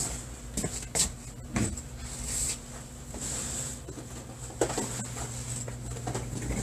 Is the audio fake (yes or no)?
no